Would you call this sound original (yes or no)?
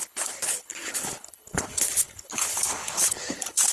no